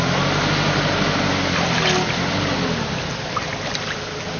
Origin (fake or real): real